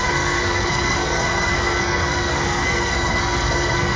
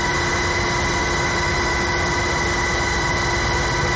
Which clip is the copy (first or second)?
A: first